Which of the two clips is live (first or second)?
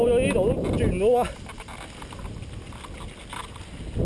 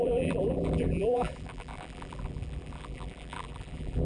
first